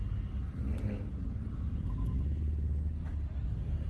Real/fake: real